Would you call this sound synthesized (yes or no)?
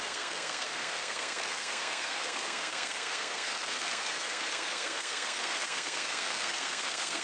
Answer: yes